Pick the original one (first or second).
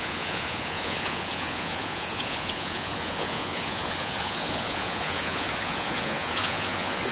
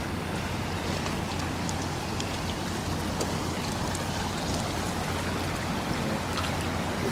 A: second